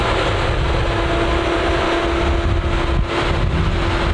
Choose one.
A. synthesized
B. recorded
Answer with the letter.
B